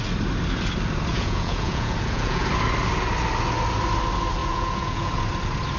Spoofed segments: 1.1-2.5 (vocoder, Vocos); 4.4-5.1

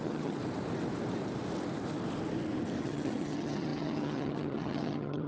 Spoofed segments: 0.0-0.4 (vocoder, HiFi-GAN); 2.8-5.3

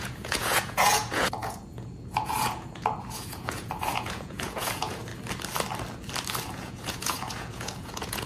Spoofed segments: 0.0-5.1 (vocoder, Vocos); 6.5-8.3

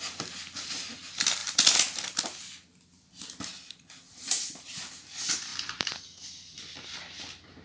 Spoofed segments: none

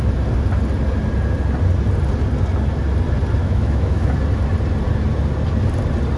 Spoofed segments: 3.4-4.1 (autoencoder, DAC-VAE)

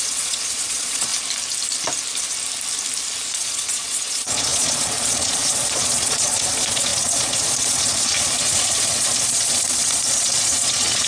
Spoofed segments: 0.0-1.1 (vocoder, Vocos); 3.3-11.1